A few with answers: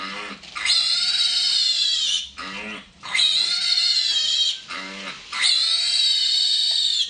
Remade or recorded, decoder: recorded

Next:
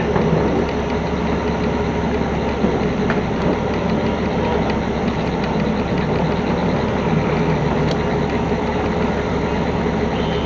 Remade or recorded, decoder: recorded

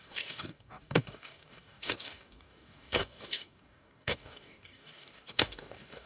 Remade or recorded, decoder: remade, codec, DAC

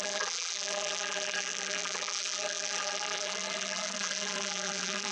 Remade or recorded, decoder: remade, vocoder, BigVGAN v2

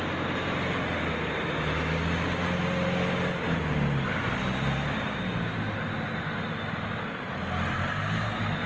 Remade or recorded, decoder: recorded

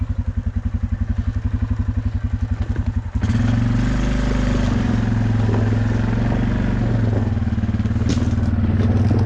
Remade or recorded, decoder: recorded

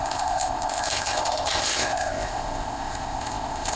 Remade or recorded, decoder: remade, codec, ZipCodec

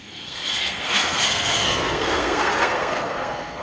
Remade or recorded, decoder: remade, codec, SNAC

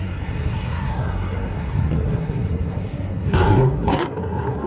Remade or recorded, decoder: remade, codec, SNAC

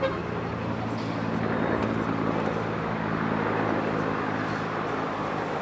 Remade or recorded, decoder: recorded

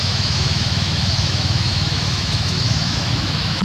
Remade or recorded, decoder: remade, autoencoder, DAC-VAE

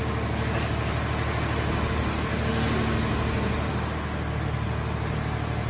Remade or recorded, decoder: recorded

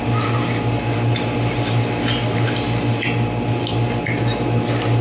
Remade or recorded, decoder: recorded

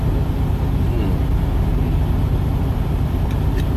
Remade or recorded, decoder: recorded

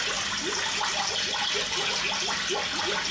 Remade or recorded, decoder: recorded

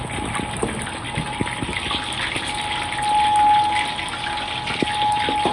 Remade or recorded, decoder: recorded